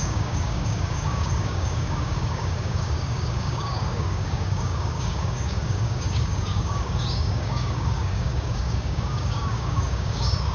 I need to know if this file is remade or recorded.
remade